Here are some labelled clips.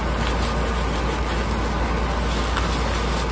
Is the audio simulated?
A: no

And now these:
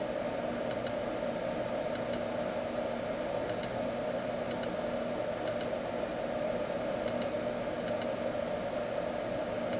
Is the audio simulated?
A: no